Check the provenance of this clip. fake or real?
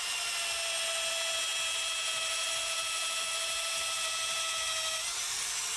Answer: real